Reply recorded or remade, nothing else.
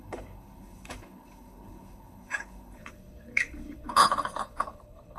remade